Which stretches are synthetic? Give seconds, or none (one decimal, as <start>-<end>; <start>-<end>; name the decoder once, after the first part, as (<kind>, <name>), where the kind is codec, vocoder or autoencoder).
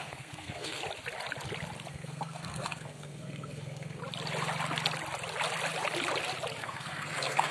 0.0-0.8 (codec, SNAC); 1.9-4.0; 6.6-7.5